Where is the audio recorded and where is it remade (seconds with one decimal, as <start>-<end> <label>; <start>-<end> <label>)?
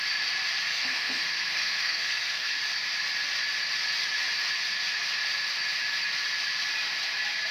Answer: 0.0-0.7 recorded; 0.7-2.5 remade; 2.5-7.5 recorded